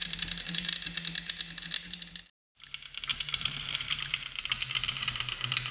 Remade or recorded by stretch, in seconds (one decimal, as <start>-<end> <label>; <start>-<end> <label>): 0.0-0.7 remade; 0.7-3.1 recorded; 3.1-5.7 remade